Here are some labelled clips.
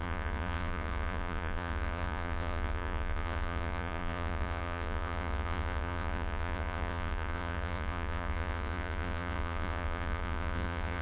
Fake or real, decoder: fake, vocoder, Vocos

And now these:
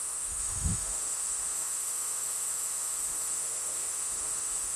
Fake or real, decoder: fake, autoencoder, DAC-VAE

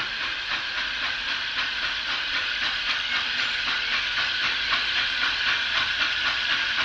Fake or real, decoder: real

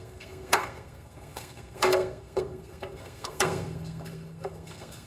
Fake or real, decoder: fake, codec, SNAC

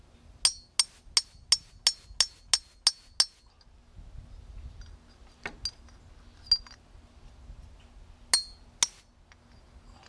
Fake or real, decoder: real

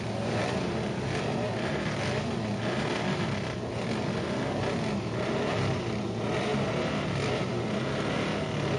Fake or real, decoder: real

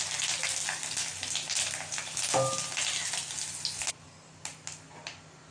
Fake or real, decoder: real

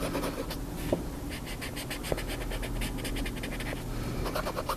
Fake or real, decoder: real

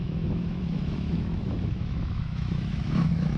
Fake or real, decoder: fake, autoencoder, DAC-VAE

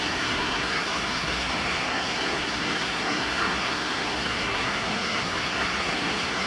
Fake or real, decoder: fake, codec, SNAC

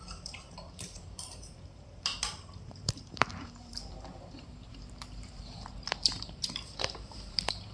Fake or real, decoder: fake, vocoder, BigVGAN v2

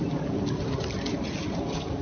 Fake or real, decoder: real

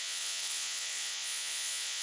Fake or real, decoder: fake, vocoder, Vocos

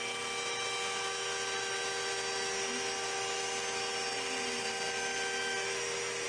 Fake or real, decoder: real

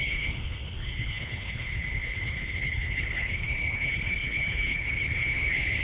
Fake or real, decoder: fake, codec, HILCodec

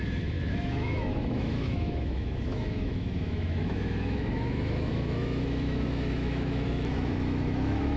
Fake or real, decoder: fake, autoencoder, DAC-VAE